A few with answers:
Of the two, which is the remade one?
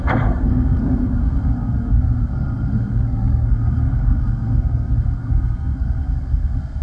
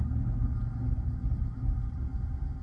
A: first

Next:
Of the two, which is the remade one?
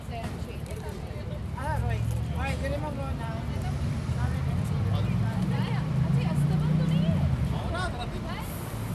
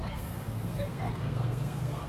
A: second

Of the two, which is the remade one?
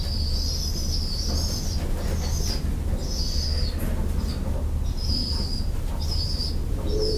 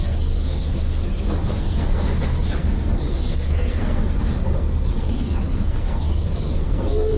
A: second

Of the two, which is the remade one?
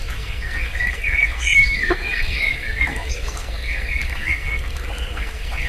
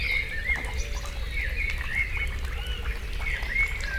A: first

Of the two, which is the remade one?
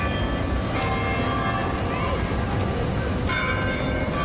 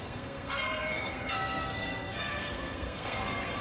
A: second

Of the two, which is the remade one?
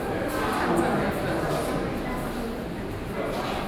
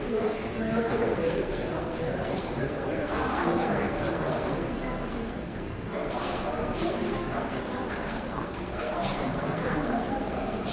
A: second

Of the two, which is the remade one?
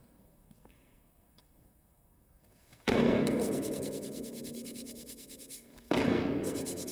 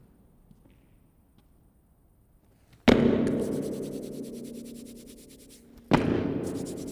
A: first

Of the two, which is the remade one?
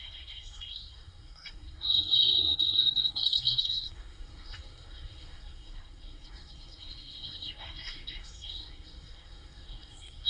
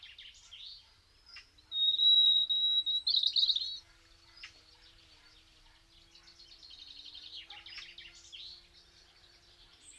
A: first